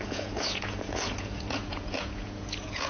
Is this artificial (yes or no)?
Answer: yes